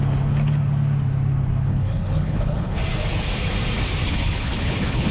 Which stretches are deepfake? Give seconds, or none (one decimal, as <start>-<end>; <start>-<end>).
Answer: 1.7-2.8; 4.0-5.1